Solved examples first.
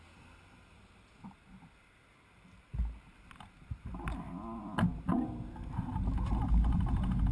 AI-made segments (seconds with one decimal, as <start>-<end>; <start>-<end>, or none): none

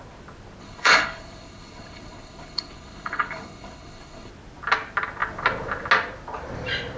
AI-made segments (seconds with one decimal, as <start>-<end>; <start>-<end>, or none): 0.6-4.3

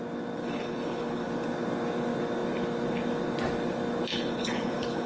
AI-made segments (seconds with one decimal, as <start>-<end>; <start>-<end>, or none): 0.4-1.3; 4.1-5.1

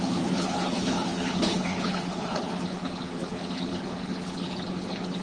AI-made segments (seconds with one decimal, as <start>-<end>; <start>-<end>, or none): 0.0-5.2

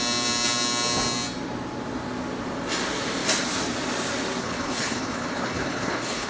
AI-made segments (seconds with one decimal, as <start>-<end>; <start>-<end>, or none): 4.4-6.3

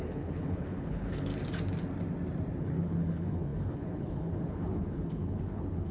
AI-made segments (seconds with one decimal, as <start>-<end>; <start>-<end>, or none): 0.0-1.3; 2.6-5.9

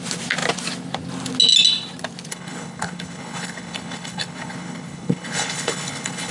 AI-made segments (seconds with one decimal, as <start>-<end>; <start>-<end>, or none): 2.3-6.3